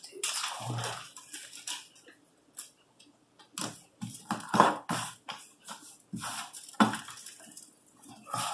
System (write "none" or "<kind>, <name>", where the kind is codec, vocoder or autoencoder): none